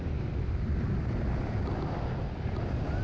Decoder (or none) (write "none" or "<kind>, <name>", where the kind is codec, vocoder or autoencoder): none